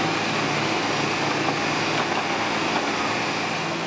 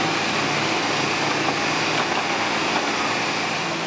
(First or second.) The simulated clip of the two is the second